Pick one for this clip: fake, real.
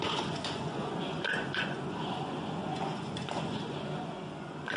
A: fake